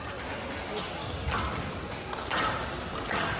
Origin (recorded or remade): recorded